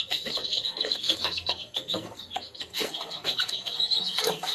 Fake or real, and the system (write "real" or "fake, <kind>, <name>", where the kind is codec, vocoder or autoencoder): fake, codec, SNAC